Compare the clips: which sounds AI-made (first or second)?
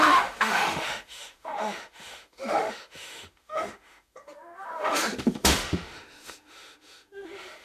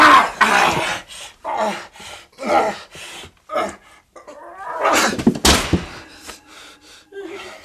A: first